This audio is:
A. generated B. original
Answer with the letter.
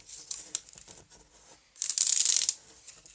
B